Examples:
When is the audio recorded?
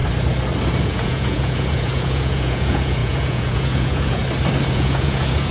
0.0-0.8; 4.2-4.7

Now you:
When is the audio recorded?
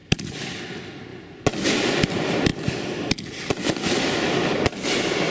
0.0-5.3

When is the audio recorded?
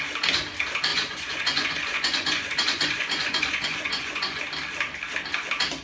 0.0-0.9; 4.4-5.8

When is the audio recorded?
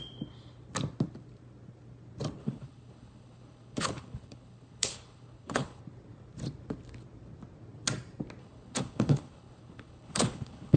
0.0-2.4; 5.8-8.4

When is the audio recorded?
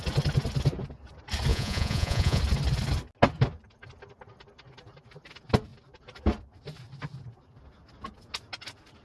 0.0-1.5; 2.4-9.0